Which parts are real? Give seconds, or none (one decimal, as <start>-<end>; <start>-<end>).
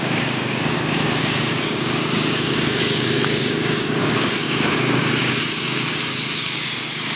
none